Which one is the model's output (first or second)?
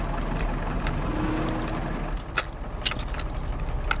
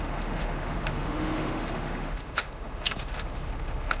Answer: second